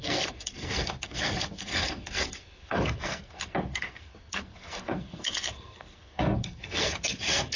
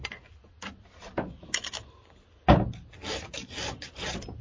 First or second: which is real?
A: second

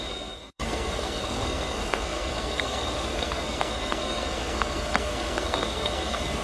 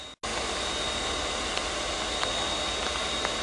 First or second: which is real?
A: second